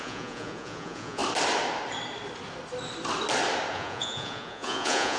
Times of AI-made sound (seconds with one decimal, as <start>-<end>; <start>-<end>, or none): 0.0-1.2; 3.7-5.2